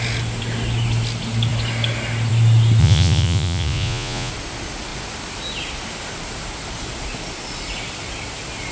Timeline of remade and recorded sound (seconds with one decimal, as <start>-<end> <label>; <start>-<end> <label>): 0.0-2.8 recorded; 2.8-4.3 remade; 4.3-8.7 recorded